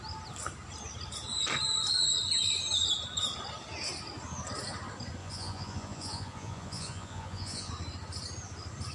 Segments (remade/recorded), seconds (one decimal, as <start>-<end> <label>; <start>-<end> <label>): 0.0-5.2 recorded; 5.2-7.7 remade; 7.7-8.9 recorded